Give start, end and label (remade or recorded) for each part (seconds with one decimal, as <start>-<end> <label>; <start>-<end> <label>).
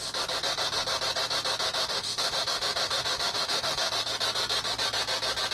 0.0-1.8 recorded; 1.8-3.9 remade; 3.9-5.5 recorded